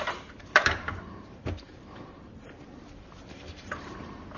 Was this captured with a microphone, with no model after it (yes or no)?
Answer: no